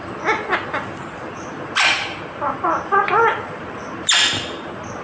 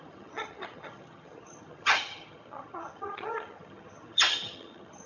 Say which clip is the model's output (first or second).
second